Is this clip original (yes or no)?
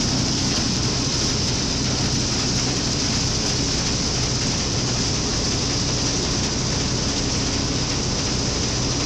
yes